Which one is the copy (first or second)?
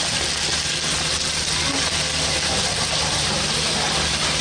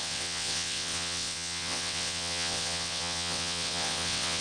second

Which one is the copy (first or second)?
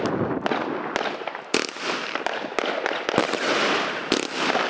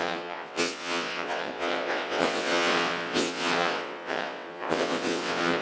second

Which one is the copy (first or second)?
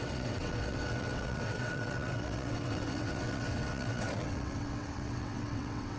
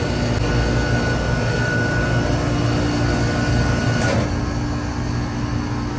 first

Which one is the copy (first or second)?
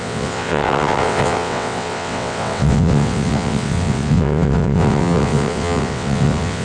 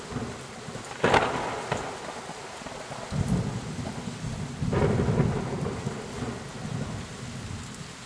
first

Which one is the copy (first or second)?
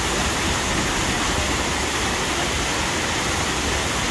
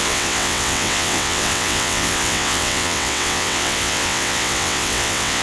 second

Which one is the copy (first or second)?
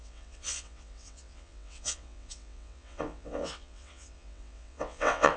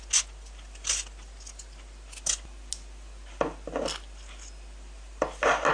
first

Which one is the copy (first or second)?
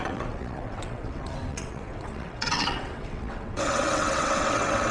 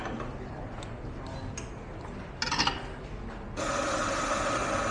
first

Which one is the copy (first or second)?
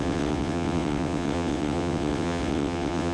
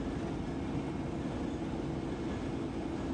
first